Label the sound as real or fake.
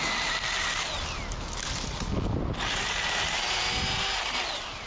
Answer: real